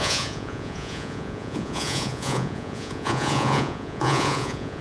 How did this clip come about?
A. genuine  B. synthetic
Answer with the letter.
B